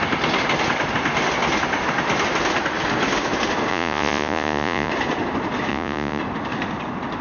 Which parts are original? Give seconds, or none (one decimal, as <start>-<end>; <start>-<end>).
0.0-3.7; 4.9-5.7; 6.2-7.2